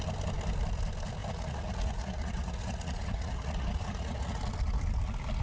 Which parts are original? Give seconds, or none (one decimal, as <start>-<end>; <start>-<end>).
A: 0.0-1.2; 4.4-5.4

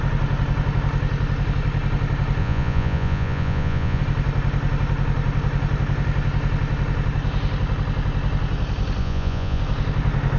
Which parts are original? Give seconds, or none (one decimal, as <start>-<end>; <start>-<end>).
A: 0.0-2.4; 4.0-9.0; 9.6-10.4

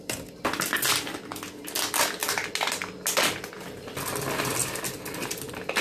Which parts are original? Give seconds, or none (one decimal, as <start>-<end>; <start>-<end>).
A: 0.0-5.8